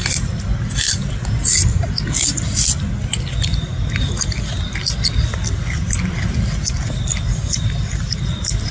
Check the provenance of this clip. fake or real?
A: real